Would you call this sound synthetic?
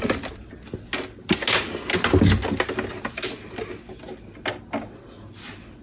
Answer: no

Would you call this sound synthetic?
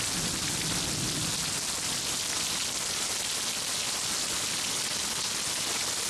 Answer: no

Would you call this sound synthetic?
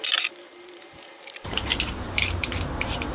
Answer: yes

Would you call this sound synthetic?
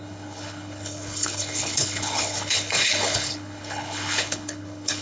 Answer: yes